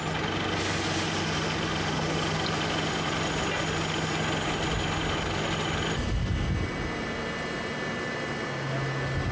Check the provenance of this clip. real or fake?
real